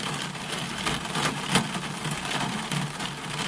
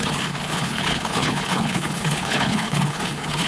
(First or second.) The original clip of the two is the first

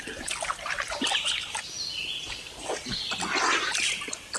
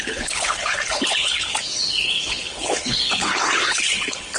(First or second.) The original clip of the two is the first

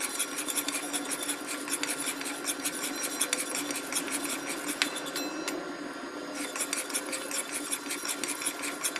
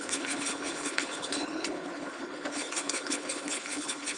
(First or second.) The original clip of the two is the first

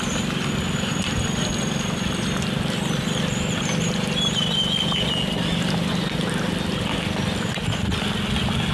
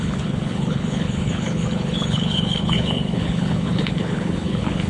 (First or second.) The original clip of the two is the first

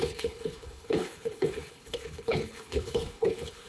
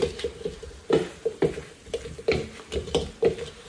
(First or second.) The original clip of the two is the second